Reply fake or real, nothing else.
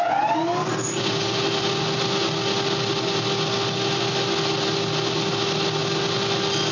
real